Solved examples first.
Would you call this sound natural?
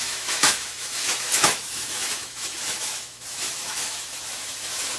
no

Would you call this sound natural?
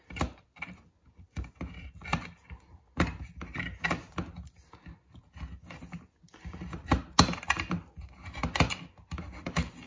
yes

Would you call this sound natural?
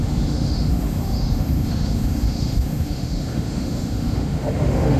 no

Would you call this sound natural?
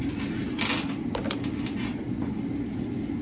yes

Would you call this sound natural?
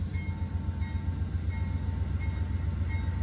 yes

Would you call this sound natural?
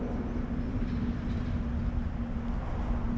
yes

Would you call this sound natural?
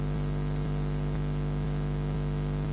yes